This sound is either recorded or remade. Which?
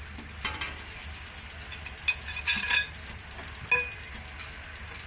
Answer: recorded